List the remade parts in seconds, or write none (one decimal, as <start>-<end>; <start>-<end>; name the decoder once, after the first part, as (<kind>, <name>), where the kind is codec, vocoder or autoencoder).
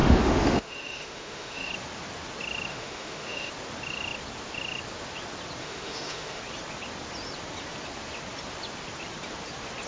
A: 0.0-1.7 (autoencoder, DAC-VAE); 2.7-3.5; 5.6-6.4